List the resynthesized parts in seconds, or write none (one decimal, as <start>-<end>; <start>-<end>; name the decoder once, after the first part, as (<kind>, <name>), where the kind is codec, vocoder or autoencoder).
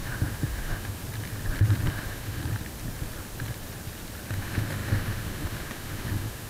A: 0.0-1.0 (autoencoder, DAC-VAE); 1.9-2.4; 4.3-6.5